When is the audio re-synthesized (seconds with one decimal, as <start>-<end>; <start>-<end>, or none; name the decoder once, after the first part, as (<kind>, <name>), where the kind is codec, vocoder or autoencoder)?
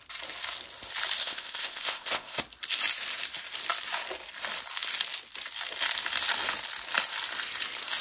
1.2-2.4 (codec, ZipCodec)